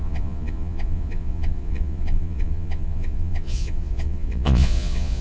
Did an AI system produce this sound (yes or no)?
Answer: yes